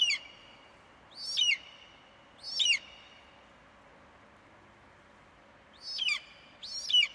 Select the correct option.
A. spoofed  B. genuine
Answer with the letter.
B